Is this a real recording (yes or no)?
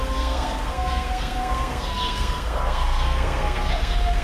no